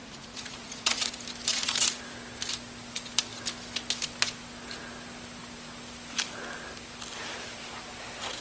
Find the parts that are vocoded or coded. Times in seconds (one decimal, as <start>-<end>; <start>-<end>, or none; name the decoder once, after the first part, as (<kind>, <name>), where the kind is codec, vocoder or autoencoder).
0.0-1.1 (vocoder, Vocos); 1.5-2.0